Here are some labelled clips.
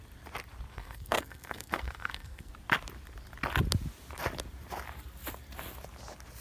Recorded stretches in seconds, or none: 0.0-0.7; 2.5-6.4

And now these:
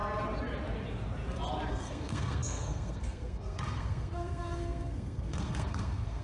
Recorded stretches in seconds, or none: 0.0-1.7

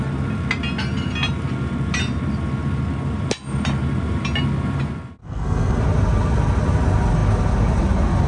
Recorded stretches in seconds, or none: 0.0-5.2; 5.8-8.3

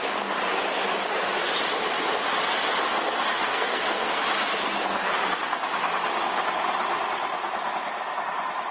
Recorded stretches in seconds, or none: 0.0-3.4; 4.2-8.7

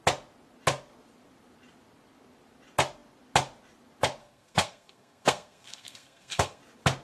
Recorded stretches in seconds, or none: 0.0-4.2; 6.6-7.0

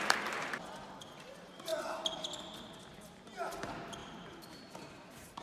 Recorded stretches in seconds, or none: 0.0-5.4

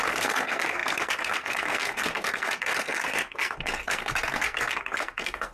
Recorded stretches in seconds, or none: none